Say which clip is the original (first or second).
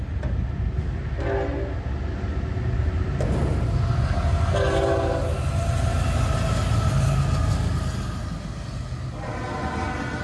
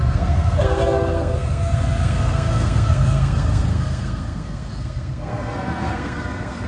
first